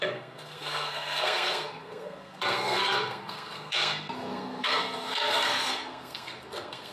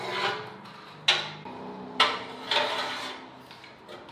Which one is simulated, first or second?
first